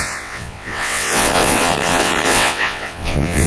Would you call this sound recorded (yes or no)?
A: no